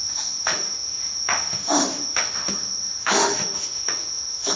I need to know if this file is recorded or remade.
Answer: remade